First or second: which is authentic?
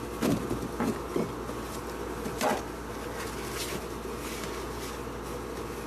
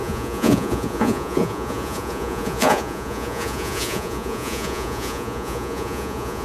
first